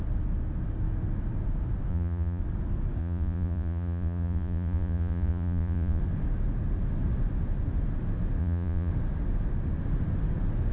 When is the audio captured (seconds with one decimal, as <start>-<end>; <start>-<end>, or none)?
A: 0.0-1.9; 2.4-3.0; 6.0-8.4; 8.9-10.7